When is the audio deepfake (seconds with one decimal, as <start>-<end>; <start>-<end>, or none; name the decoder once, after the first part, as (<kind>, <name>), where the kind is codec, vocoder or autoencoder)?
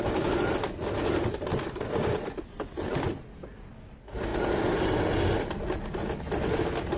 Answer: none